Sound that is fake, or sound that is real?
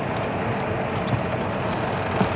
real